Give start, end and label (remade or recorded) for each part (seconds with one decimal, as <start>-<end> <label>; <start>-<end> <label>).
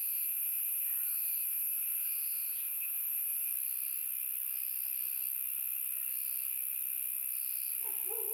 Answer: 0.0-3.5 remade; 3.5-8.3 recorded